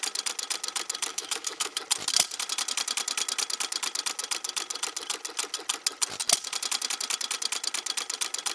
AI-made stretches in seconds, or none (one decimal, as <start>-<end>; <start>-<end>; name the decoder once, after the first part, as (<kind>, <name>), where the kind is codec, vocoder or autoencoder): 1.1-1.8 (autoencoder, DAC-VAE)